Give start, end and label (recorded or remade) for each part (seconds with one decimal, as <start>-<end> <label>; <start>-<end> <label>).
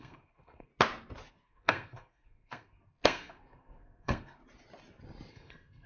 0.0-0.7 remade; 0.7-1.3 recorded; 1.3-4.4 remade; 4.4-5.3 recorded; 5.3-5.9 remade